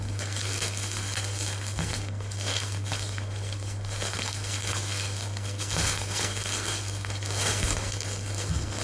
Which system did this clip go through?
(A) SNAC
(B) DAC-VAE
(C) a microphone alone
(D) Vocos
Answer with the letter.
A